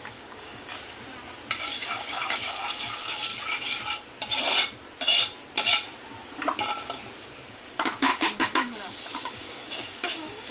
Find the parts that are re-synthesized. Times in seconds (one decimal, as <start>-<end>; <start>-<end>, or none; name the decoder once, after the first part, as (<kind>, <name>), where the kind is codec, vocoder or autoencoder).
0.0-0.7 (codec, DAC); 1.6-3.3; 7.5-10.5